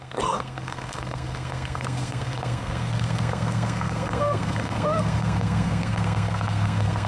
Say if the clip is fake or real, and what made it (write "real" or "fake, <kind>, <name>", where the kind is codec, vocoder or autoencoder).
fake, codec, SNAC